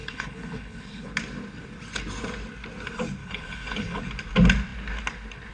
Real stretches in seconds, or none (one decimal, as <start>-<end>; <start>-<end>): 1.1-3.2; 4.0-5.5

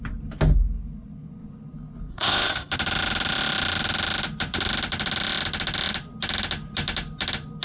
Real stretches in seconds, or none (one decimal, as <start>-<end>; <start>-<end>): 0.0-2.1; 2.7-7.6